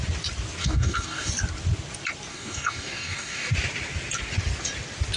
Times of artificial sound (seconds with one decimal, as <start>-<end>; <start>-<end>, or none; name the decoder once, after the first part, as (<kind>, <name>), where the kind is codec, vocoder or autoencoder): 0.6-1.3 (codec, DAC); 2.3-3.5